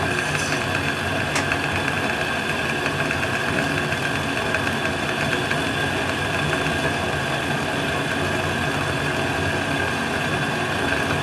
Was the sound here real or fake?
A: real